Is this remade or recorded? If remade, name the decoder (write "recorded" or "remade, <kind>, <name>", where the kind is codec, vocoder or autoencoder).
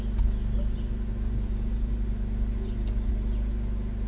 recorded